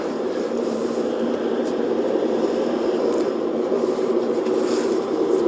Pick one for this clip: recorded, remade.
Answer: remade